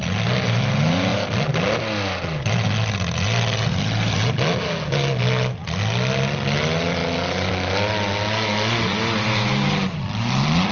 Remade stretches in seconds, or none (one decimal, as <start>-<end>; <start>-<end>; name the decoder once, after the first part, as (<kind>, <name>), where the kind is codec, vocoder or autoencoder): none